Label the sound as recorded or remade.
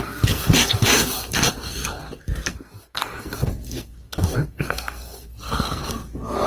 remade